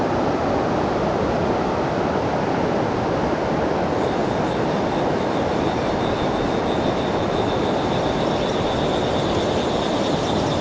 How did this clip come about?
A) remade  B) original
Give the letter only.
B